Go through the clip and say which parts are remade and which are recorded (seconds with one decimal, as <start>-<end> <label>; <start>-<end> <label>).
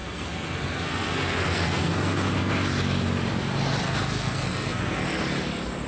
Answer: 0.0-2.5 remade; 2.5-3.8 recorded; 3.8-5.2 remade; 5.2-5.9 recorded